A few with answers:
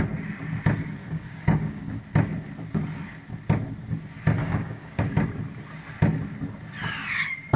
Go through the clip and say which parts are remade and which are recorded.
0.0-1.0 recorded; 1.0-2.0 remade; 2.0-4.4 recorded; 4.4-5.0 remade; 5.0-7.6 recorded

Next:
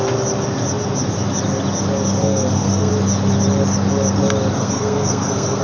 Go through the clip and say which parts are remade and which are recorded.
0.0-2.2 recorded; 2.2-2.9 remade; 2.9-4.6 recorded; 4.6-5.6 remade

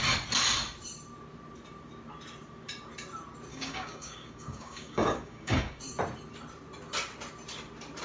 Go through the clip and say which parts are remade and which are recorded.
0.0-3.5 recorded; 3.5-5.8 remade; 5.8-8.0 recorded

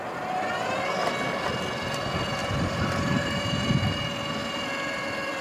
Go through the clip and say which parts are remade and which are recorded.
0.0-2.4 recorded; 2.4-4.0 remade; 4.0-5.4 recorded